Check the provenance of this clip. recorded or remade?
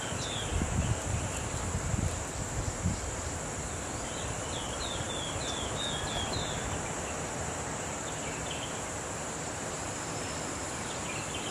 recorded